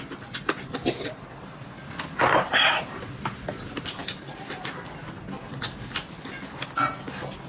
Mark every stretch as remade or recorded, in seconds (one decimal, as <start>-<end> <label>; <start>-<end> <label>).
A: 0.0-7.5 recorded